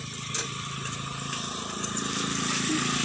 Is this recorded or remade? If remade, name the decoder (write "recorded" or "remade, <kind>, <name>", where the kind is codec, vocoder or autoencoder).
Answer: remade, vocoder, BigVGAN v2